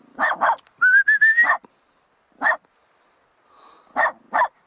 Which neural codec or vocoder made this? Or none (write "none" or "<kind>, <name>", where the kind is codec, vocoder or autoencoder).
none